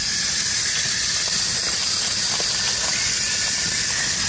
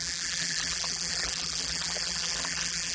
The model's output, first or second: second